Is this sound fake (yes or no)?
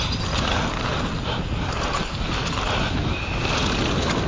no